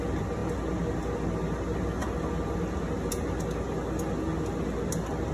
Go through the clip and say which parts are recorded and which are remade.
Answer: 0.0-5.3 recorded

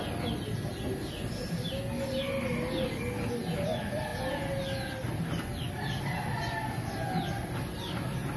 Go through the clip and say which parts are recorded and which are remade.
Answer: 0.0-8.4 recorded

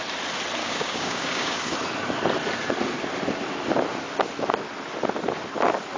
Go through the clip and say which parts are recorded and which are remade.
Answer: 0.0-0.6 recorded; 0.6-1.6 remade; 1.6-6.0 recorded

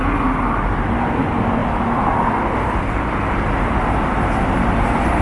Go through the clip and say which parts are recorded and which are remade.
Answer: 0.0-5.2 recorded

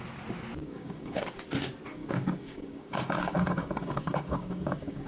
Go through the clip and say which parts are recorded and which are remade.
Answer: 0.0-0.6 recorded; 0.6-1.2 remade; 1.2-2.0 recorded; 2.0-5.1 remade

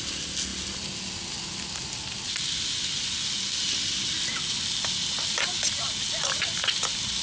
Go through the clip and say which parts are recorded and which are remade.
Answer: 0.0-7.2 recorded

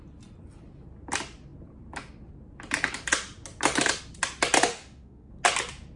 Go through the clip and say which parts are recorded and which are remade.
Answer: 0.0-4.7 recorded; 4.7-5.3 remade; 5.3-6.0 recorded

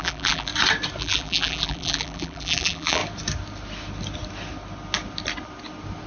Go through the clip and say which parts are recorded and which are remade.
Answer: 0.0-0.5 remade; 0.5-1.0 recorded; 1.0-3.0 remade; 3.0-6.1 recorded